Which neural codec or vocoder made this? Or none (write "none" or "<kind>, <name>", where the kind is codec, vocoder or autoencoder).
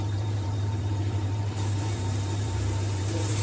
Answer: vocoder, BigVGAN v2